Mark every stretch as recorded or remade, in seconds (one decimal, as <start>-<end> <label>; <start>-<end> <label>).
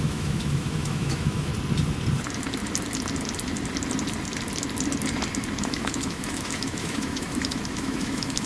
0.0-1.5 remade; 1.5-5.6 recorded; 5.6-8.5 remade